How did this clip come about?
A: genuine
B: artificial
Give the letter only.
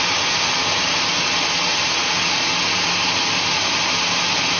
A